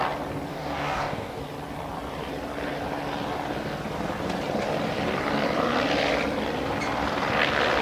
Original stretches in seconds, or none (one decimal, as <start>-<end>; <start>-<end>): 0.0-0.5; 1.4-7.8